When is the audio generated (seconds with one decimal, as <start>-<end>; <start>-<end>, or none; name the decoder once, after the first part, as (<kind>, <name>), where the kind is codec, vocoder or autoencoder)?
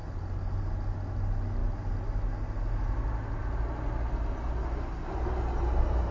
none